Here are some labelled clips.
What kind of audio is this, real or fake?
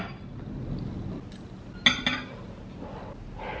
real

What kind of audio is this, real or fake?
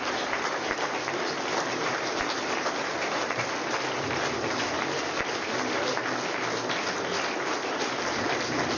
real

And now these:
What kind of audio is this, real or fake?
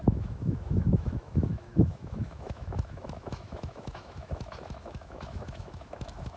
fake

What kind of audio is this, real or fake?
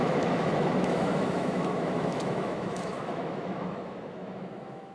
fake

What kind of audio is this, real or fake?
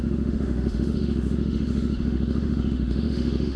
fake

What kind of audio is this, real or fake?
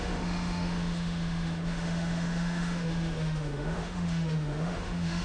fake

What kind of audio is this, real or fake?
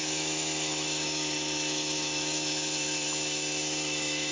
fake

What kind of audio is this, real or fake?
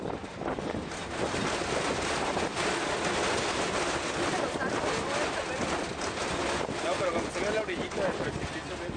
real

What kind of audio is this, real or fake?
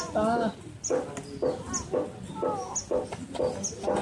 real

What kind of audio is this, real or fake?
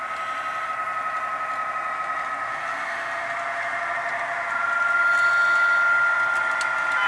real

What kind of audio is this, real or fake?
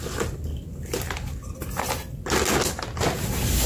real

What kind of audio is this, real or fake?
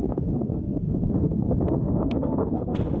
fake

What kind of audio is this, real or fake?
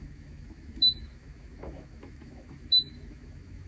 fake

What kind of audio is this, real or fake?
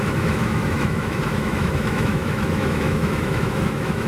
fake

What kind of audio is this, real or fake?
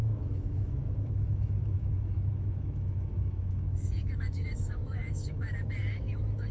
fake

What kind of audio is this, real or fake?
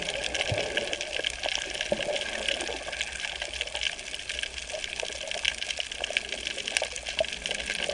real